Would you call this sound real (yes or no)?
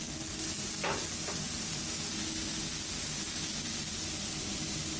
yes